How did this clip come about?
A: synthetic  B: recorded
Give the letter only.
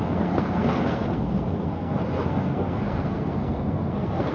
A